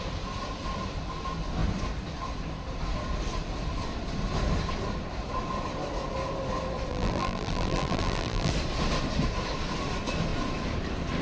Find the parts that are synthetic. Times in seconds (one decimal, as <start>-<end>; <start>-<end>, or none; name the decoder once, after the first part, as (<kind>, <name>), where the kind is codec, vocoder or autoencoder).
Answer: 6.9-8.5 (vocoder, BigVGAN v2)